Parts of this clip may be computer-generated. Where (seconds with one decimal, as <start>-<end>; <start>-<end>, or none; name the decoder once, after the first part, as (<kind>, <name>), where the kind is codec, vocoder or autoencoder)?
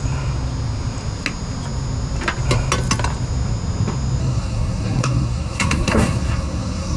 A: 4.2-7.0 (codec, SNAC)